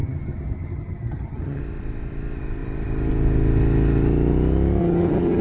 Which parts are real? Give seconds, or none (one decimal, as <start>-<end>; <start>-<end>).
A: 1.6-4.8